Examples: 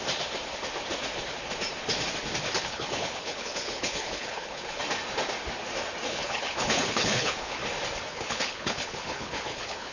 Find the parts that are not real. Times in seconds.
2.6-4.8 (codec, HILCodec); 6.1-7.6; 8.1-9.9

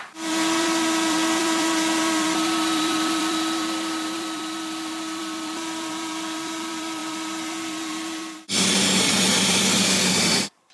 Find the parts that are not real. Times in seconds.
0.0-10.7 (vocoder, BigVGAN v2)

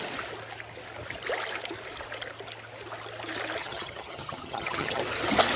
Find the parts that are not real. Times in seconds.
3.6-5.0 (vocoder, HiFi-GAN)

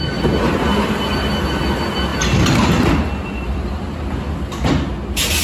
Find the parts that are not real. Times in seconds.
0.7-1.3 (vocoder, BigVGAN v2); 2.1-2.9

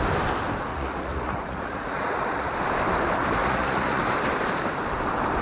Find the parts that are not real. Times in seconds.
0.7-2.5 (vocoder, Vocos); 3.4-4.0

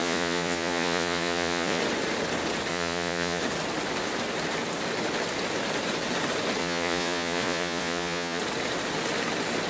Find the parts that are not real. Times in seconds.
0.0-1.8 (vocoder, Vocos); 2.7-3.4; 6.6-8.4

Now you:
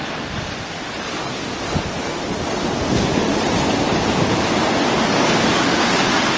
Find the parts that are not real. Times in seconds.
none

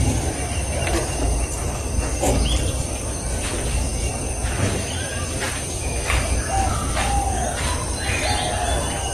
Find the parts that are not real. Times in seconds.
0.0-9.1 (vocoder, BigVGAN v2)